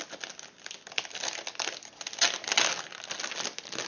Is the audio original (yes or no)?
yes